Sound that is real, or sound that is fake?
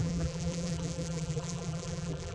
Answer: fake